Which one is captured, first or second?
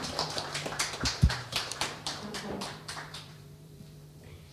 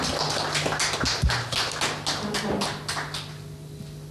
second